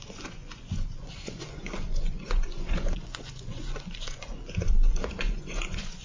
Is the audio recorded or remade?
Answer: remade